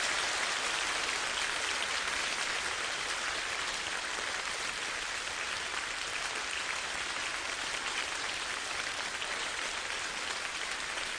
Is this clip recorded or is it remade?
recorded